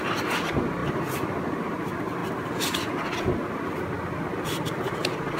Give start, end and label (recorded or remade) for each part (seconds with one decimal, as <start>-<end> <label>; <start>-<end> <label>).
0.0-2.2 remade; 2.2-5.4 recorded